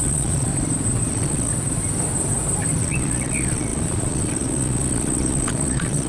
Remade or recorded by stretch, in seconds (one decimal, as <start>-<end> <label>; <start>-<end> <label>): 0.0-0.5 remade; 0.5-1.1 recorded; 1.1-1.5 remade; 1.5-2.8 recorded; 2.8-6.1 remade